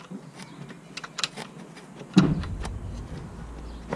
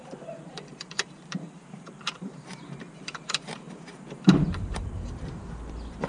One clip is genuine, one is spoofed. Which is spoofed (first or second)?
second